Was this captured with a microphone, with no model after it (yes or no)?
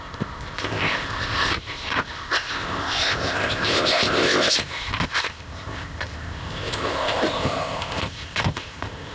no